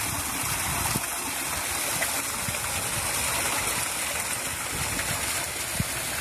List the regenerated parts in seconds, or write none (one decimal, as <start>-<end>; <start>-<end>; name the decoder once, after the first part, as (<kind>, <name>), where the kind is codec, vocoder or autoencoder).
0.0-2.0 (vocoder, BigVGAN v2); 4.9-6.2